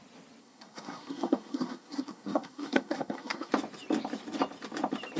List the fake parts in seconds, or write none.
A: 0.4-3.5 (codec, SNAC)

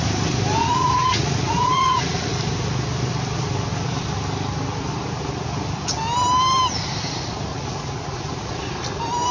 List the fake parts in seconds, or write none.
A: 0.6-2.3 (vocoder, Vocos); 7.5-8.5

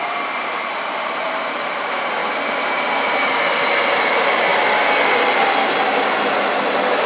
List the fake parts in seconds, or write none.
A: 0.0-2.2 (vocoder, BigVGAN v2); 3.8-4.5

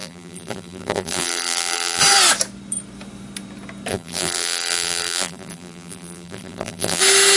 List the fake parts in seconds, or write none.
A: 0.0-2.0 (vocoder, BigVGAN v2); 3.9-7.0